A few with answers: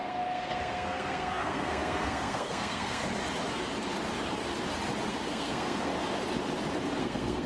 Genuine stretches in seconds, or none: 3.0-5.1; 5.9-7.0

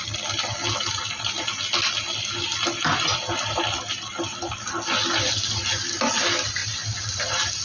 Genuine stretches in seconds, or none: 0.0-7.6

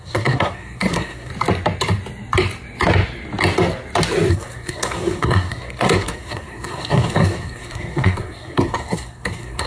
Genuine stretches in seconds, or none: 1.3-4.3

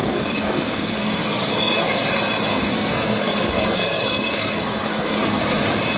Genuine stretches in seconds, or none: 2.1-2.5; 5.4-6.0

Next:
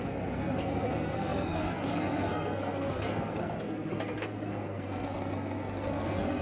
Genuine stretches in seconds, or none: none

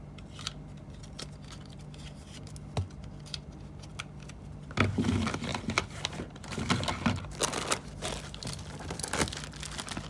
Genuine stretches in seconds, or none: 0.0-10.1

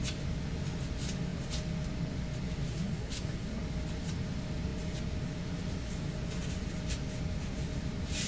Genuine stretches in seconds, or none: 0.0-2.7; 3.6-8.3

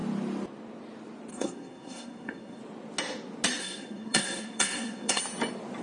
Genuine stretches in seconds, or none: 0.0-1.3; 2.6-3.6; 5.2-5.8